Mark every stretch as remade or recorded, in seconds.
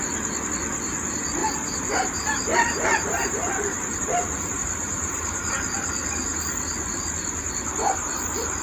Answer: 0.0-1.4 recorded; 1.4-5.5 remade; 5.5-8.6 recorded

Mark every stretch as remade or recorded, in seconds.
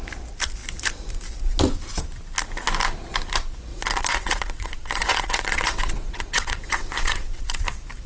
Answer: 0.0-3.7 recorded; 3.7-7.6 remade; 7.6-8.1 recorded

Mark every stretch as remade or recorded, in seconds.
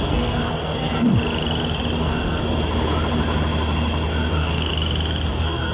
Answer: 0.0-1.1 remade; 1.1-2.0 recorded; 2.0-2.4 remade; 2.4-4.3 recorded; 4.3-4.7 remade; 4.7-5.3 recorded; 5.3-5.7 remade